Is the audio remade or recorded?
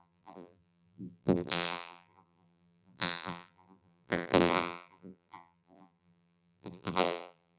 remade